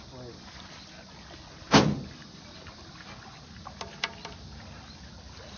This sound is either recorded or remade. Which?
recorded